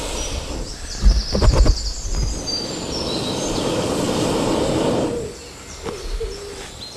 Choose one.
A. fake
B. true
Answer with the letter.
B